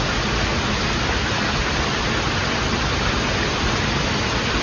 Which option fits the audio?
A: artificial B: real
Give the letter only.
B